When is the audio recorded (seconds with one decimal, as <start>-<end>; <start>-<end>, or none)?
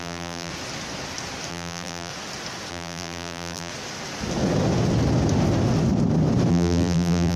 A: 0.5-1.5; 2.1-2.7; 3.7-6.5